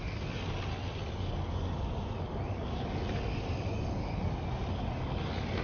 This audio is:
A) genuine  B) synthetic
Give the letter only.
A